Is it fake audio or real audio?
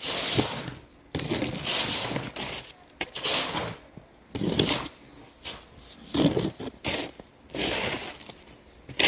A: real